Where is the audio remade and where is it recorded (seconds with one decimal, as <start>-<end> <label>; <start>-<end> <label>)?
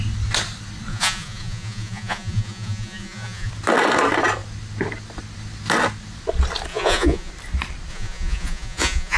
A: 0.0-0.9 recorded; 0.9-3.5 remade; 3.5-6.7 recorded; 6.7-7.3 remade; 7.3-7.9 recorded; 7.9-9.2 remade